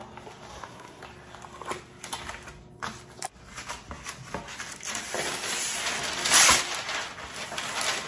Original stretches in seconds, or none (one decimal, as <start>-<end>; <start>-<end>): 0.0-0.5; 1.0-8.1